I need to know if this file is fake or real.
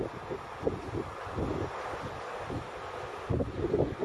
real